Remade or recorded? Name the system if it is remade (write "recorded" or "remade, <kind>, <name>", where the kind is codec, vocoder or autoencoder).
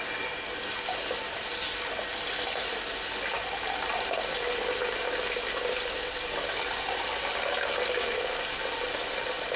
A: recorded